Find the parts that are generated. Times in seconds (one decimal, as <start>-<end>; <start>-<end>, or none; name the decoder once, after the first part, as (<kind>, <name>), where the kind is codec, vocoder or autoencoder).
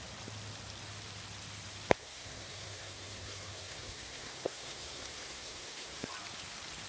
2.0-6.1 (codec, SNAC)